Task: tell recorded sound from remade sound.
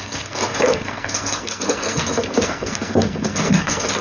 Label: remade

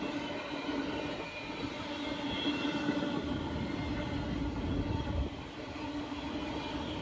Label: recorded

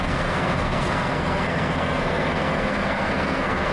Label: remade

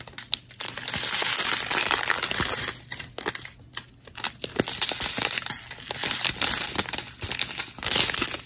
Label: recorded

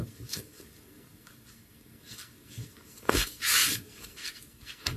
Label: remade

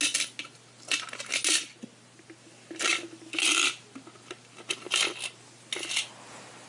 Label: recorded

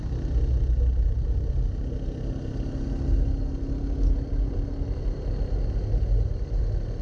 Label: recorded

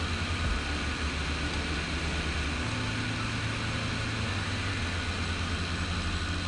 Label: recorded